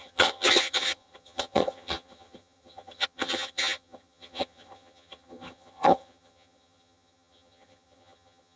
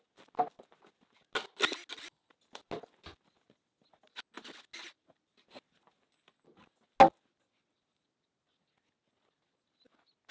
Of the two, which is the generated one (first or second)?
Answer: first